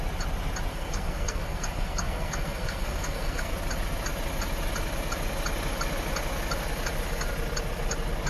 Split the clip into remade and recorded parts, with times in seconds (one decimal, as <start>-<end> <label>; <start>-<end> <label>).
0.0-0.7 recorded; 0.7-3.5 remade; 3.5-8.3 recorded